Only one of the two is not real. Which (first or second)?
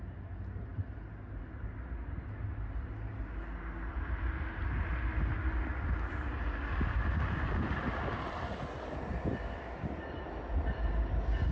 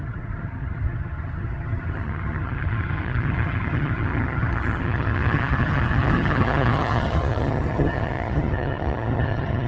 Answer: second